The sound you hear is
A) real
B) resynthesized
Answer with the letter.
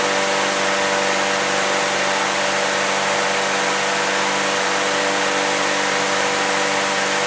A